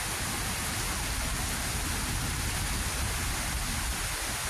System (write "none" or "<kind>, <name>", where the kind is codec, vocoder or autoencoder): none